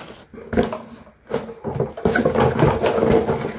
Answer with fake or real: real